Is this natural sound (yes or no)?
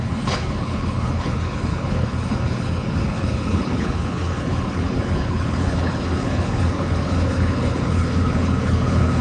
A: no